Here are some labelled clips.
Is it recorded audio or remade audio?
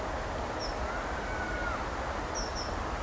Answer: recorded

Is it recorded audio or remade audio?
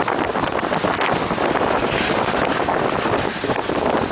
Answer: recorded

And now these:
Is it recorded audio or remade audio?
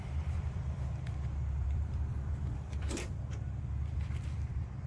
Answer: remade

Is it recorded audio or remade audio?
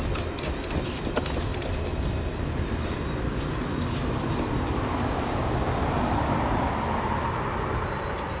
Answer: recorded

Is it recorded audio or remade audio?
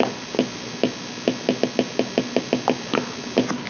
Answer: recorded